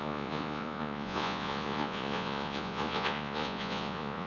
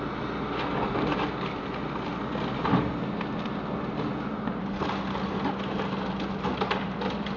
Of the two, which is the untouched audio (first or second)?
second